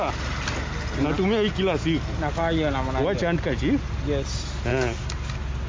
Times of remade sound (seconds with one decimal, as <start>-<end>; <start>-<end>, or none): 4.7-5.3